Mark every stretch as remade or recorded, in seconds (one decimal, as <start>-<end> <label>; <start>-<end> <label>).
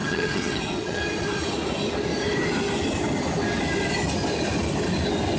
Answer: 0.0-1.0 remade; 1.0-5.4 recorded